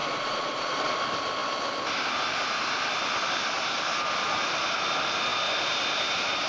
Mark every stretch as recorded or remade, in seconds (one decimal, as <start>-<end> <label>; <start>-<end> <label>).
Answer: 0.0-0.9 remade; 0.9-6.5 recorded